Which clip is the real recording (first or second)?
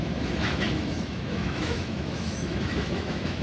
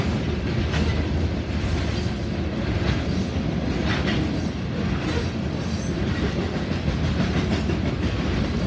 second